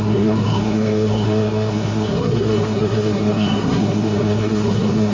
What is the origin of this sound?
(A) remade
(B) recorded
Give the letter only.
A